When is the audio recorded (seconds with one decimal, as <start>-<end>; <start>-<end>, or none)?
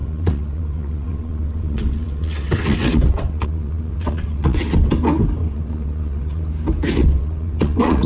4.9-5.4; 6.5-7.0